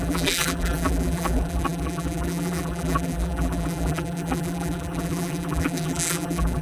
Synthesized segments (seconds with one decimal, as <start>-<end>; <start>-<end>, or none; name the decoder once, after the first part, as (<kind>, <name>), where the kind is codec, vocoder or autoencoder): 0.0-6.6 (vocoder, BigVGAN v2)